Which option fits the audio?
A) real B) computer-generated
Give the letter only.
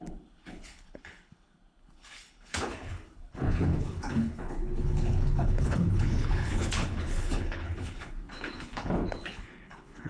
B